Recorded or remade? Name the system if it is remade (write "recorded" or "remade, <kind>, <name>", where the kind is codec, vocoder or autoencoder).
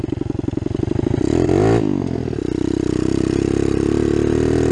recorded